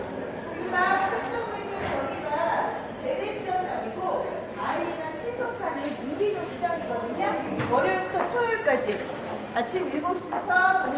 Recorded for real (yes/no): yes